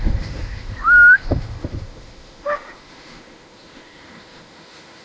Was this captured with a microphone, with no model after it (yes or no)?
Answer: no